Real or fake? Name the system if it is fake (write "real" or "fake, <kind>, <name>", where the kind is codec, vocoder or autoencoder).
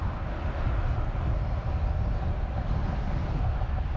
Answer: real